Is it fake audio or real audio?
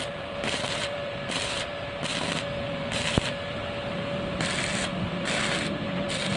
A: fake